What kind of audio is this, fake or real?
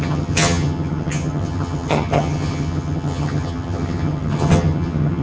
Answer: fake